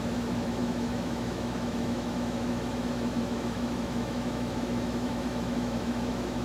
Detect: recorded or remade remade